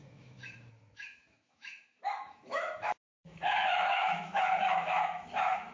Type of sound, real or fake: fake